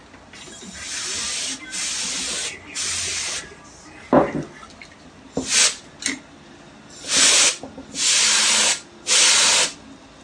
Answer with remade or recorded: recorded